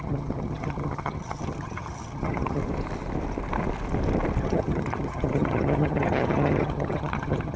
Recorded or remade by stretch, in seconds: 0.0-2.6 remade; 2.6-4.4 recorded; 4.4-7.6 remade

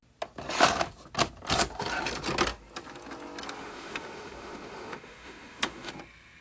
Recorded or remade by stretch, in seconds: 0.0-3.6 recorded; 3.6-5.9 remade; 5.9-6.4 recorded

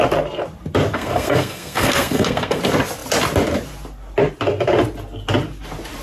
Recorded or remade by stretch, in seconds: 0.0-0.9 recorded; 0.9-2.6 remade; 2.6-6.0 recorded